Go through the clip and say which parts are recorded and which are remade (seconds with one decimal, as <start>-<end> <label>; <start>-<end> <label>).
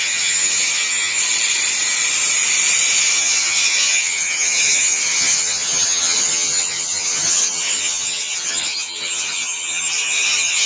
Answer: 0.0-1.2 remade; 1.2-3.0 recorded; 3.0-10.7 remade